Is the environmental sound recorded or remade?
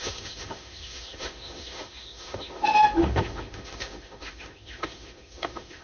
remade